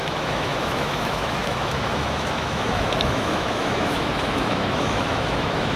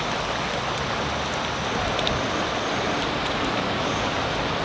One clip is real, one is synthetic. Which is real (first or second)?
second